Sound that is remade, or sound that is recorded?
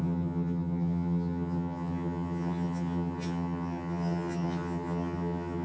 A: remade